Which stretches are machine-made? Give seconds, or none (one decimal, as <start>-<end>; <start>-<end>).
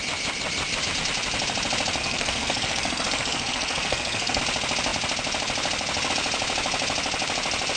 2.0-4.4